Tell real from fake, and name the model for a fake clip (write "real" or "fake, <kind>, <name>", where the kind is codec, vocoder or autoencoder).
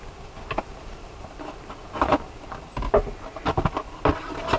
real